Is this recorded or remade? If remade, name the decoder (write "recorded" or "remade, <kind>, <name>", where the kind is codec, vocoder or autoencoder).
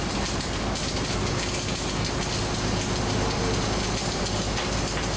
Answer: recorded